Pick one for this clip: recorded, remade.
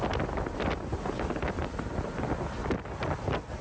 recorded